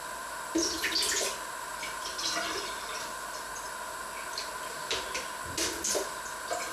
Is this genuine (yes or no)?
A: yes